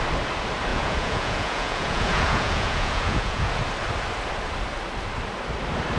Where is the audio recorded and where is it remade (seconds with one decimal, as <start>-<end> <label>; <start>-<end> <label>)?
0.0-0.7 recorded; 0.7-3.5 remade; 3.5-6.0 recorded